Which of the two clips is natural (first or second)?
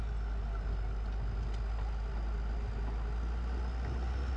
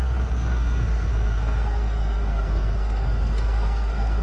first